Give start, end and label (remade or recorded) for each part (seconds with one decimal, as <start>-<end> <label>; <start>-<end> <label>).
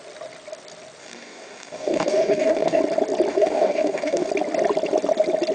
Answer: 0.0-1.0 recorded; 1.0-2.8 remade; 2.8-3.3 recorded; 3.3-4.3 remade; 4.3-5.5 recorded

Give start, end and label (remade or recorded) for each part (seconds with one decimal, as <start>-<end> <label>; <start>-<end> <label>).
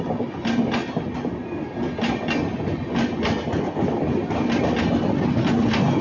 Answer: 0.0-6.0 recorded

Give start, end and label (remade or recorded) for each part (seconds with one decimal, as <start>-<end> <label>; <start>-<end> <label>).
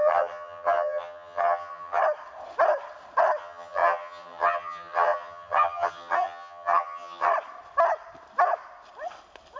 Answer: 0.0-2.0 remade; 2.0-3.4 recorded; 3.4-7.3 remade; 7.3-9.6 recorded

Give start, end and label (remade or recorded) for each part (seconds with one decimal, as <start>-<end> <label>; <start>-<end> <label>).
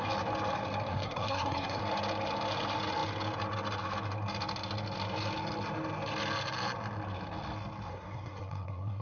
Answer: 0.0-0.9 recorded; 0.9-1.8 remade; 1.8-7.9 recorded; 7.9-9.0 remade